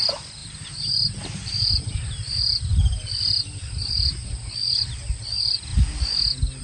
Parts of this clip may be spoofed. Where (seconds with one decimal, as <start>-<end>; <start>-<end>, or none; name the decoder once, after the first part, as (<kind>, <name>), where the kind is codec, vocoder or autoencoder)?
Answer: none